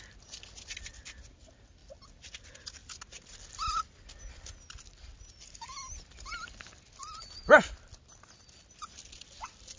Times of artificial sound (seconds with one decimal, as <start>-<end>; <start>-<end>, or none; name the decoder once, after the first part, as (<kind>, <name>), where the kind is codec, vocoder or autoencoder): 0.0-1.8 (vocoder, BigVGAN v2); 2.4-2.8; 5.3-6.3; 8.9-9.8

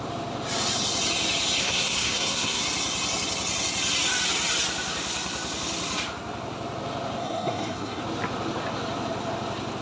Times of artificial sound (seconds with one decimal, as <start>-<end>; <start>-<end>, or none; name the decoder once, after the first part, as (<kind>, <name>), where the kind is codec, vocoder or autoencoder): 1.6-2.6 (codec, SNAC); 7.2-8.0